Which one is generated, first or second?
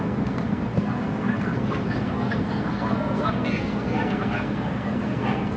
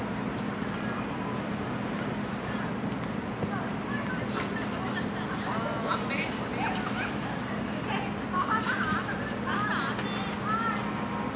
first